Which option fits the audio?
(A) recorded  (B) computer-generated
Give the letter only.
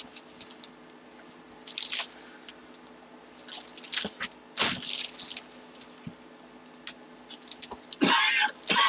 A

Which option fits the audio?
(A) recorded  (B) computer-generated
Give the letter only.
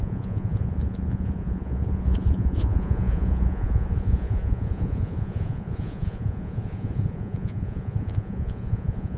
B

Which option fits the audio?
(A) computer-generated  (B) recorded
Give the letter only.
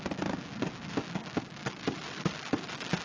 B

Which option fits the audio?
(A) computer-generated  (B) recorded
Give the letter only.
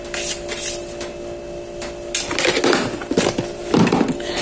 B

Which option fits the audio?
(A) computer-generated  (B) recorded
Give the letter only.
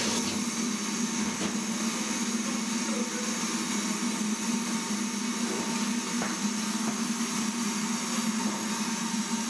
B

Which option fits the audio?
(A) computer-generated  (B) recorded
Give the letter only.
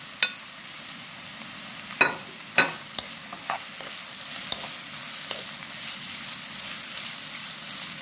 B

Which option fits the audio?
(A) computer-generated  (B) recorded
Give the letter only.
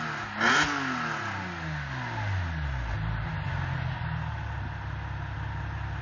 B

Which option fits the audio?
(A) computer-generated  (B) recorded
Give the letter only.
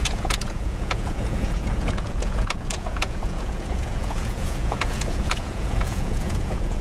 A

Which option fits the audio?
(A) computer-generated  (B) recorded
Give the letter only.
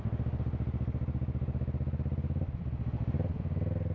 B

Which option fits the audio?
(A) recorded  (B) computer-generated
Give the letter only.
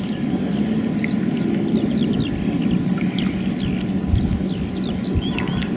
A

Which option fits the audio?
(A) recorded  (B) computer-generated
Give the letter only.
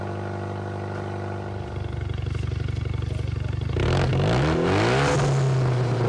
A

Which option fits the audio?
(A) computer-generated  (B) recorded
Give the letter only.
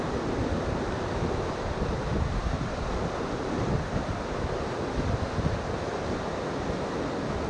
B